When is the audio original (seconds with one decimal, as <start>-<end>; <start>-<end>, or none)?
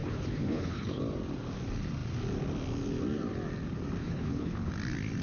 1.0-4.0; 4.7-5.2